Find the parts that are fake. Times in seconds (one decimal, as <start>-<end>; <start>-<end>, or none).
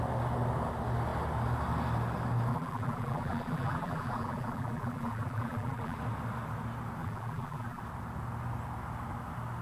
2.5-6.0; 7.0-7.8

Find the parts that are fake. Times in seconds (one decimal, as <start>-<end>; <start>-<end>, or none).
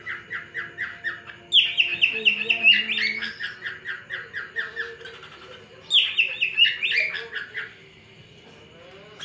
none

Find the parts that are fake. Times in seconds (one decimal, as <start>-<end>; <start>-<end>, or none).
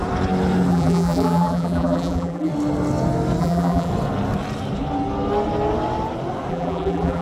0.7-2.5; 3.4-3.9; 6.5-7.2